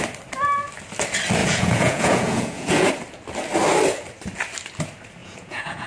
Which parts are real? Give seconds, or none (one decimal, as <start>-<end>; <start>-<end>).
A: 0.0-1.4; 2.9-5.2